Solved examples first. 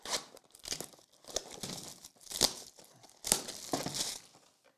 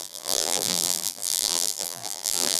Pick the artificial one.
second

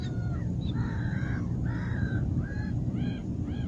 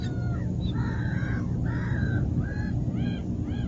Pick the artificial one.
first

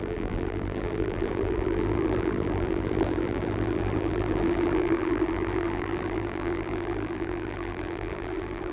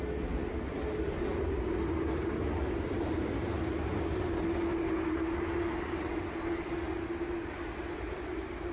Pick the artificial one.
first